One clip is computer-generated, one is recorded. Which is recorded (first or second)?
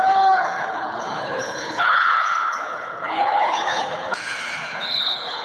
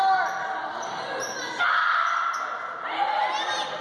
second